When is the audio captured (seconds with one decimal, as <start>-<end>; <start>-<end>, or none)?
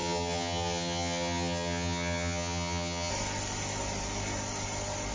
3.1-5.1